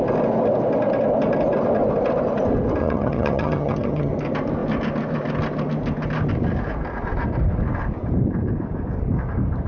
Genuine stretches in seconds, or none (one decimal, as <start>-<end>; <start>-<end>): 0.0-2.8; 4.1-9.7